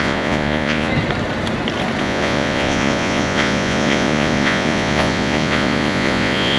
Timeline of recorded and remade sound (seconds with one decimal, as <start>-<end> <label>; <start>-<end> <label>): 0.0-0.9 remade; 0.9-2.0 recorded; 2.0-6.6 remade